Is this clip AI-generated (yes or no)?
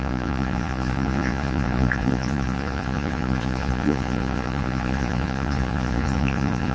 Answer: yes